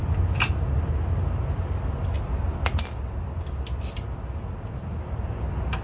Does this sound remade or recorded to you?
recorded